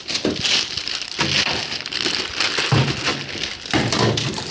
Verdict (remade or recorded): recorded